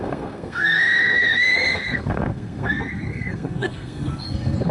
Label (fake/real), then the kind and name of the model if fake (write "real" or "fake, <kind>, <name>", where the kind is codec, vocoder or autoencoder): fake, codec, SNAC